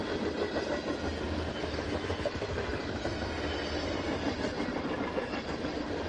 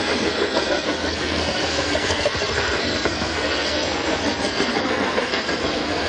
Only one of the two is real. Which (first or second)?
first